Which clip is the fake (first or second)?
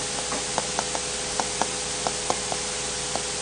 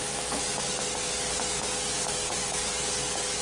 second